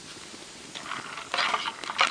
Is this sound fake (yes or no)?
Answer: no